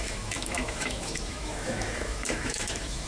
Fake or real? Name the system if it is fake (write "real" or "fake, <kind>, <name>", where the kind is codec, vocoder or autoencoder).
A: fake, autoencoder, DAC-VAE